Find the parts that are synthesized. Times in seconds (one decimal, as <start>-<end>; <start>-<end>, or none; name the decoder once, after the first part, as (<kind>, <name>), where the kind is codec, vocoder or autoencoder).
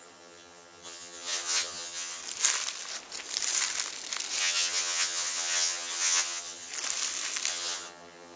0.0-2.2 (vocoder, HiFi-GAN); 4.4-6.7; 7.5-8.4